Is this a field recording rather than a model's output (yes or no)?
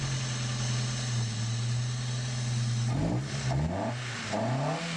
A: yes